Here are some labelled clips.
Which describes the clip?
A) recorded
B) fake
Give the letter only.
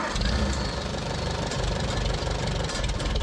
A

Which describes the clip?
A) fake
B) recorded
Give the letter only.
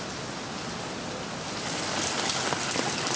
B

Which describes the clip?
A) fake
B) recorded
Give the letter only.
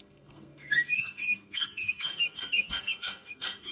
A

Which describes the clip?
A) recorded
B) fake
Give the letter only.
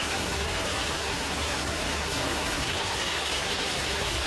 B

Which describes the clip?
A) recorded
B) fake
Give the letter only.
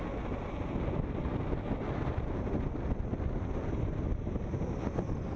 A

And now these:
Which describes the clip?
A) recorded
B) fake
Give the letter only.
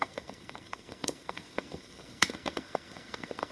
B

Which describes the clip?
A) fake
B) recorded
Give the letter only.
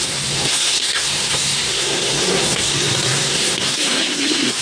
A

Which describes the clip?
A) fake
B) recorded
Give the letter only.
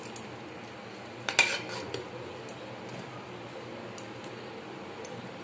B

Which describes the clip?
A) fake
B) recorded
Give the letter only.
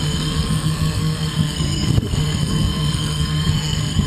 A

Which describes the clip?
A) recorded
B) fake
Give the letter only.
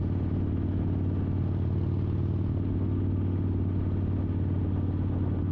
A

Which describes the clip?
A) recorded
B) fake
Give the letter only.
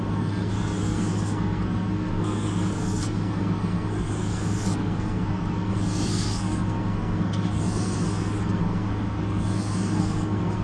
B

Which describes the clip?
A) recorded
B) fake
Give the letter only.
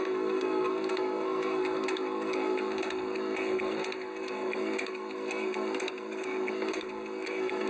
B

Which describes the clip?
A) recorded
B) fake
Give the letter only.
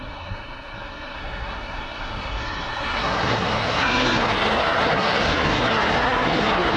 B